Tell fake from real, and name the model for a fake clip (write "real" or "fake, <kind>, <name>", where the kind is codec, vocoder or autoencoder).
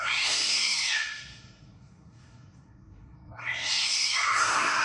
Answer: fake, codec, SNAC